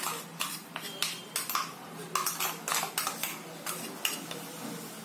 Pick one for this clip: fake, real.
real